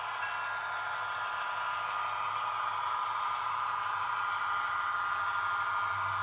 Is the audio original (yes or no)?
yes